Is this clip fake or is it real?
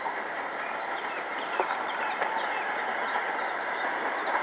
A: fake